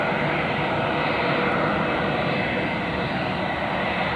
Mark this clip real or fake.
real